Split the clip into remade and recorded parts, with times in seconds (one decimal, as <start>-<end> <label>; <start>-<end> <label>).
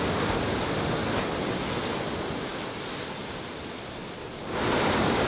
0.0-5.3 recorded